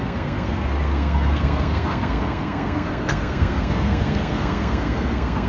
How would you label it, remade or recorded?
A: remade